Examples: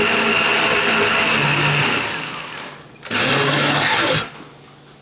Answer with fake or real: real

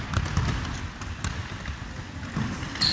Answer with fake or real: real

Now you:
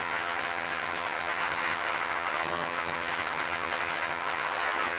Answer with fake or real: fake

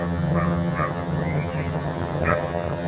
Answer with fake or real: fake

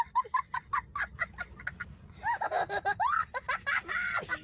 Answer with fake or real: real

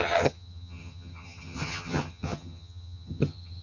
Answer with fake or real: fake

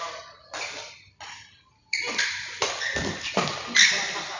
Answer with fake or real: real